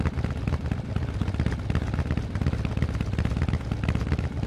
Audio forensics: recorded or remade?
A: recorded